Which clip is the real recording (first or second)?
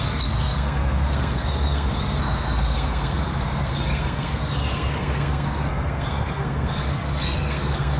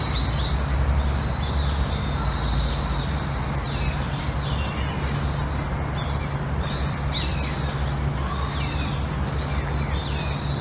second